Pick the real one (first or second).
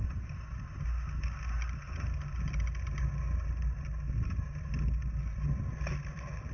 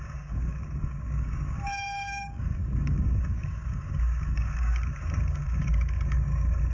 first